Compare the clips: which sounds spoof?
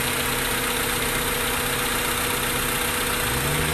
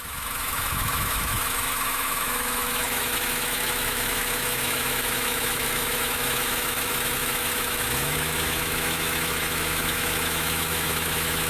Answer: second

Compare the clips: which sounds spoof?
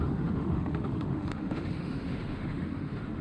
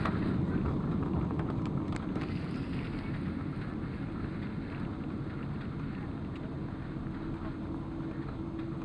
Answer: first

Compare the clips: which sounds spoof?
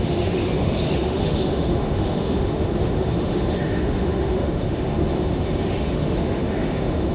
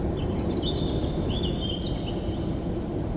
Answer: first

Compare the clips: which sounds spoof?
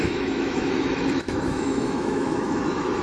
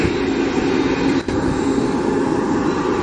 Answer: first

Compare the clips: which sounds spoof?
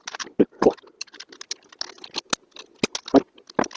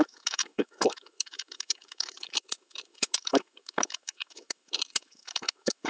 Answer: second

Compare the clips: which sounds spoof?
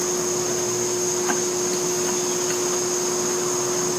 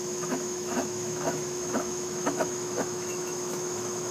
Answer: second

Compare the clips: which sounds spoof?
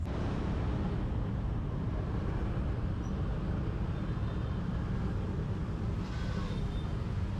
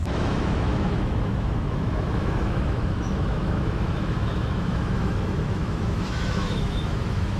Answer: second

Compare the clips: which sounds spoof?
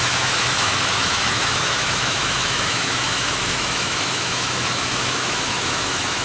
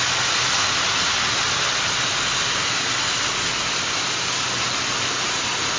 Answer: first